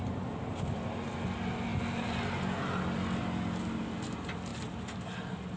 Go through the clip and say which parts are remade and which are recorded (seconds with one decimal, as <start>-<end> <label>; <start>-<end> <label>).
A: 0.0-5.6 recorded